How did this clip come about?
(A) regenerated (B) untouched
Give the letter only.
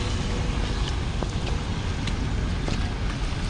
B